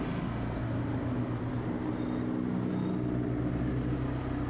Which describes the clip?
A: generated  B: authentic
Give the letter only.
B